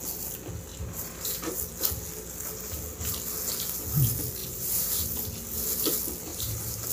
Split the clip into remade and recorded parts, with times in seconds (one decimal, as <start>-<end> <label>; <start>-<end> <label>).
0.0-0.7 recorded; 0.7-1.5 remade; 1.5-4.4 recorded; 4.4-5.0 remade; 5.0-6.3 recorded; 6.3-6.9 remade

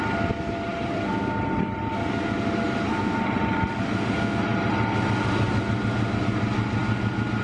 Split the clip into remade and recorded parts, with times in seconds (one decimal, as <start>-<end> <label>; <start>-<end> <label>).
0.0-0.7 recorded; 0.7-1.2 remade; 1.2-3.0 recorded; 3.0-3.8 remade; 3.8-7.4 recorded

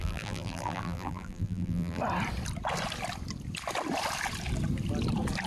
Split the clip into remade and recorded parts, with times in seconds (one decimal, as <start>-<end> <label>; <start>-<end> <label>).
0.0-2.0 remade; 2.0-5.5 recorded

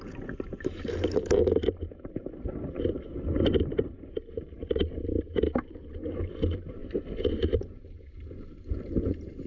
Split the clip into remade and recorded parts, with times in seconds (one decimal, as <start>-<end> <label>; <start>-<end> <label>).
0.0-6.8 remade; 6.8-7.4 recorded; 7.4-9.5 remade